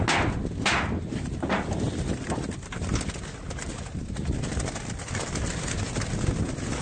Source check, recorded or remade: recorded